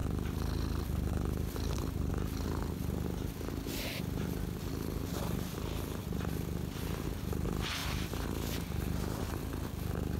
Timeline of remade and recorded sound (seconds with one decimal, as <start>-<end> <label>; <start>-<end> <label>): 0.0-6.0 recorded; 6.0-6.8 remade; 6.8-10.2 recorded

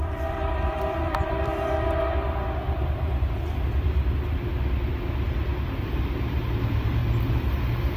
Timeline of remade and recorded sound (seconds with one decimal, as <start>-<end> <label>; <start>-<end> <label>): 0.0-1.5 remade; 1.5-3.3 recorded; 3.3-4.5 remade; 4.5-5.8 recorded; 5.8-7.0 remade; 7.0-8.0 recorded

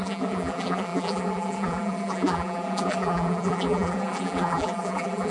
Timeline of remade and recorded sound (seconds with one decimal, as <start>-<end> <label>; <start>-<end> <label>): 0.0-5.3 remade

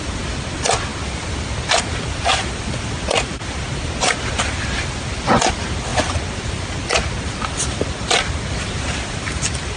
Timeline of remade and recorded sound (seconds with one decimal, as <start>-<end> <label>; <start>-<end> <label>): 0.0-5.9 remade; 5.9-7.2 recorded; 7.2-9.8 remade

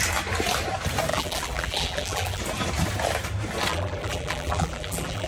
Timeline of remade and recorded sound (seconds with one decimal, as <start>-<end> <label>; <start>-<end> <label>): 0.0-1.1 recorded; 1.1-2.4 remade; 2.4-3.7 recorded; 3.7-5.3 remade

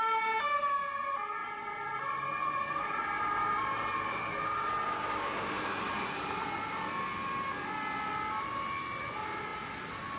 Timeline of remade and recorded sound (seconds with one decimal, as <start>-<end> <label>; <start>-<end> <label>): 0.0-1.4 recorded; 1.4-6.4 remade; 6.4-10.2 recorded